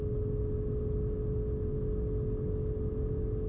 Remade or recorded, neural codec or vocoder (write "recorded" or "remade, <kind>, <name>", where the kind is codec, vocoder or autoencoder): recorded